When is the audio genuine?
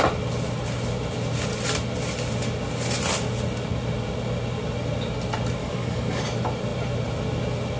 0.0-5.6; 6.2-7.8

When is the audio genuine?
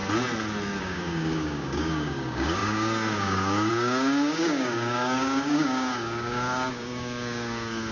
0.0-0.8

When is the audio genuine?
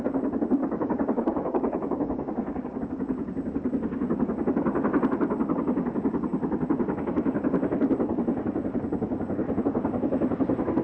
0.0-0.6; 2.8-10.8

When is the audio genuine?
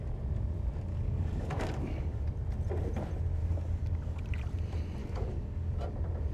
0.0-0.9; 2.3-3.4; 4.2-5.0; 5.7-6.3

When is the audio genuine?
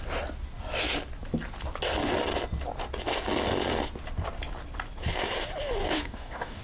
0.0-5.8